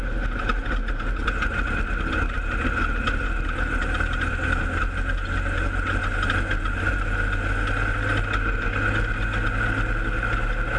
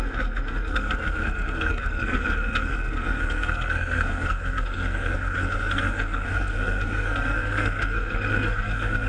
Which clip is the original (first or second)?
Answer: first